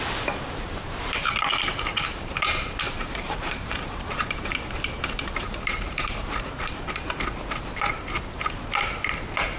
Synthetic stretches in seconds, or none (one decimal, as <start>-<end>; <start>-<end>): 1.9-6.8

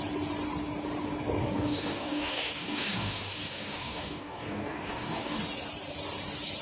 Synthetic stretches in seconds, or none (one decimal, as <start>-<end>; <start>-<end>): 1.4-5.4

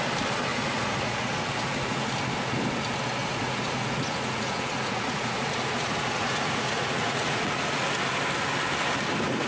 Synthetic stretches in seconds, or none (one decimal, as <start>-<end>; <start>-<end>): 0.5-2.1; 3.2-7.9

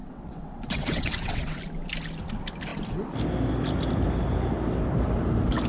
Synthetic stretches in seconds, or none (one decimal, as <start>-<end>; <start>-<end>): 0.0-1.6

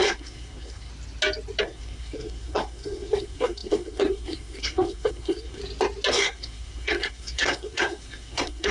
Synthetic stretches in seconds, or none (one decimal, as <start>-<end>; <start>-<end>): 0.0-0.9; 1.6-5.6; 6.1-8.7

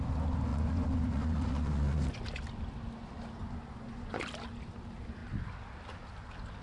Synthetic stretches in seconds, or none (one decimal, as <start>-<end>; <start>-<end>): 0.5-2.0; 3.4-4.2

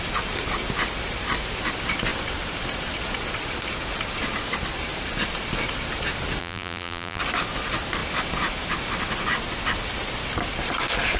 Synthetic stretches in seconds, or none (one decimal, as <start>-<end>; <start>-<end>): 6.4-7.2

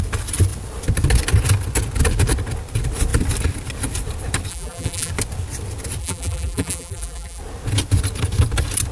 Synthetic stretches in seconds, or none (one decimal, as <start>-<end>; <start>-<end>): 4.5-5.1; 6.0-7.4